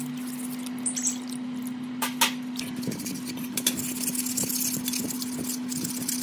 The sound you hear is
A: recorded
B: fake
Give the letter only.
A